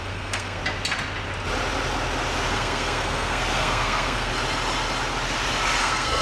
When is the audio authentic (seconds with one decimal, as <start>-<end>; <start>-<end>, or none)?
0.6-2.5; 4.3-5.8